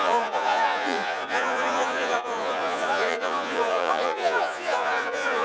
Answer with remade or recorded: remade